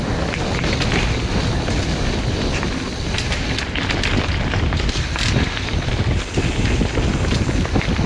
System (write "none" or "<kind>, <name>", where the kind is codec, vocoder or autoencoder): none